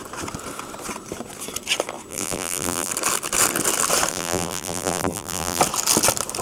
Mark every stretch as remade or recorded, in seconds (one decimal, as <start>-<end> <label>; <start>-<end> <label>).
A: 0.0-2.1 recorded; 2.1-2.9 remade; 2.9-4.1 recorded; 4.1-5.6 remade; 5.6-6.4 recorded